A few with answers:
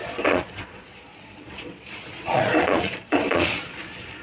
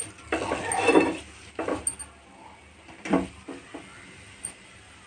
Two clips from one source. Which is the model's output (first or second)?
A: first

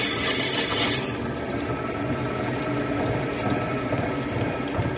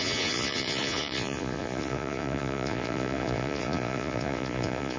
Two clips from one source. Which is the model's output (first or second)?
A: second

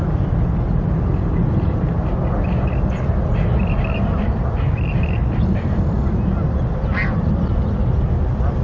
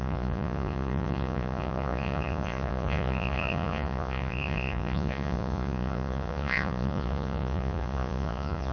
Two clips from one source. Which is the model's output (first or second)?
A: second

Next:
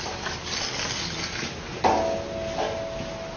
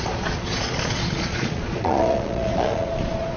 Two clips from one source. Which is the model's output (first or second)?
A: second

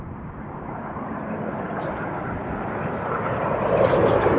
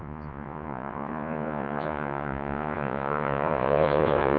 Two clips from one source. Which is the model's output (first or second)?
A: second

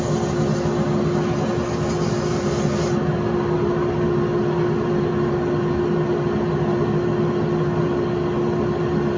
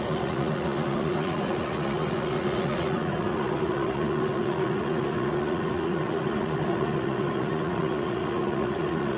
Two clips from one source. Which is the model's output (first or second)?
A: second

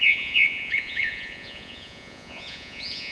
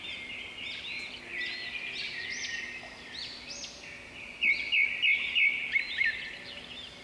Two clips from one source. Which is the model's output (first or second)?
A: first